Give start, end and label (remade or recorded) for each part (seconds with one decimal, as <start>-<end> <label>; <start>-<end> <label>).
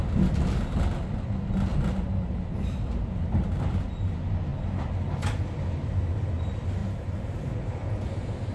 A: 0.0-1.7 recorded; 1.7-3.8 remade; 3.8-6.8 recorded; 6.8-7.5 remade; 7.5-8.5 recorded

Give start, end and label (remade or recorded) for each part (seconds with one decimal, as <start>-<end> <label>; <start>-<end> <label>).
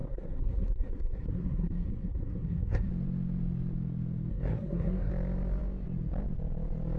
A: 0.0-2.9 remade; 2.9-4.3 recorded; 4.3-5.1 remade; 5.1-7.0 recorded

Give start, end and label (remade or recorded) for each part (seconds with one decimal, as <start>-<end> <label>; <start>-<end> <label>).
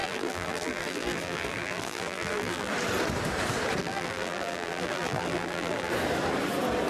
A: 0.0-2.7 remade; 2.7-3.8 recorded; 3.8-5.9 remade; 5.9-6.9 recorded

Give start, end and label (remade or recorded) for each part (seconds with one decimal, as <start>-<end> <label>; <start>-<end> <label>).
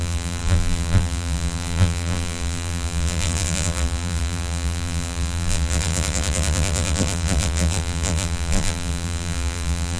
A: 0.0-10.0 remade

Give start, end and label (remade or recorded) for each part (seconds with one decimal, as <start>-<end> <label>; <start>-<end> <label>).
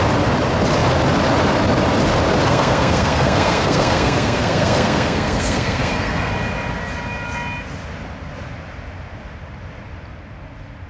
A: 0.0-2.5 recorded; 2.5-6.3 remade; 6.3-10.9 recorded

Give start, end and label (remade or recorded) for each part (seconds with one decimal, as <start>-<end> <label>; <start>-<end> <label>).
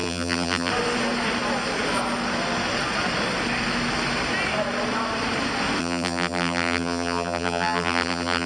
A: 0.0-0.7 remade; 0.7-5.8 recorded; 5.8-8.5 remade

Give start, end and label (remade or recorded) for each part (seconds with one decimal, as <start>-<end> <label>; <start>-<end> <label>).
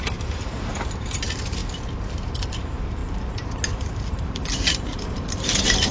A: 0.0-3.0 remade; 3.0-3.7 recorded; 3.7-5.9 remade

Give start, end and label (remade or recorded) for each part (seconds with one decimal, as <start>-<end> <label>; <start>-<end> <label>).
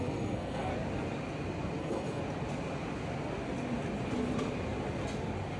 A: 0.0-0.7 remade; 0.7-1.8 recorded; 1.8-2.2 remade; 2.2-5.6 recorded